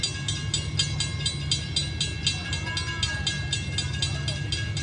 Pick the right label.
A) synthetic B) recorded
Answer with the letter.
B